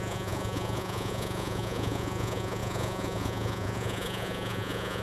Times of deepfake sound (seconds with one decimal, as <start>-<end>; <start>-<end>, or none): 0.0-5.0